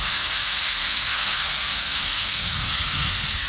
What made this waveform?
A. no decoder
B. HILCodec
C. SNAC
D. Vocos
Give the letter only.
C